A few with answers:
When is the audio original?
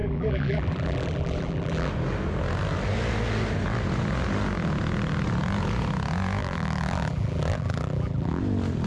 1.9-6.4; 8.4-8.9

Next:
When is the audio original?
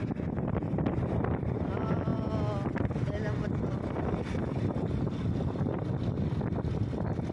0.0-7.3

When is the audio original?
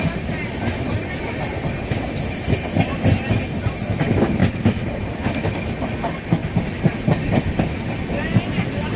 0.0-9.0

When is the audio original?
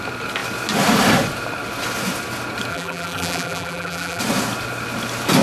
0.0-2.7; 4.2-5.4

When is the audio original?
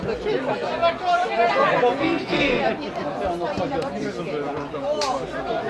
0.0-2.0; 2.6-5.7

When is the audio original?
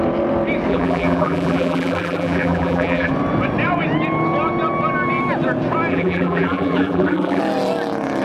0.0-0.7; 3.1-5.9; 7.4-8.2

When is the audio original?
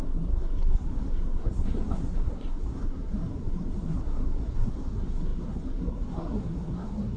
none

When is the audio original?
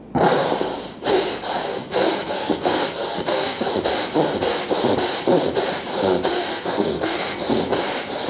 0.0-1.6; 3.7-6.5; 7.6-8.3